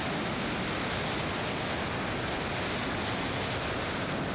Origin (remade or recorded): recorded